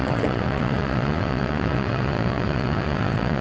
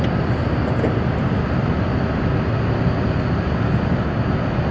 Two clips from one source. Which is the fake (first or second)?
first